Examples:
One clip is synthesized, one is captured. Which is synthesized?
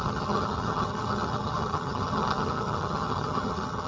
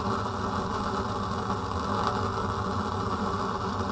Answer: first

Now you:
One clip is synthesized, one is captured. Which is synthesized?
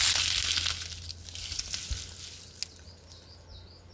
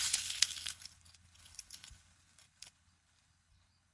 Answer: second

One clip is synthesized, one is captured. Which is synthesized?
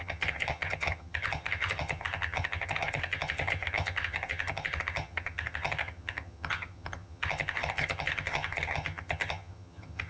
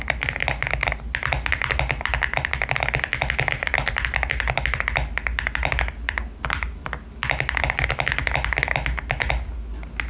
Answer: first